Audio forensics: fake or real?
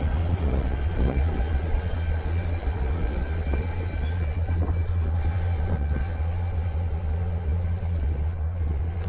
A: fake